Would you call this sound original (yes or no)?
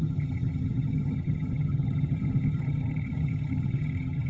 no